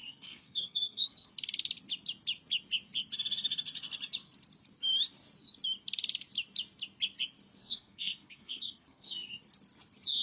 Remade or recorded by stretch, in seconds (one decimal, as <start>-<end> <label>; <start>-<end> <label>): 0.0-1.3 remade; 1.3-7.6 recorded; 7.6-9.4 remade; 9.4-10.2 recorded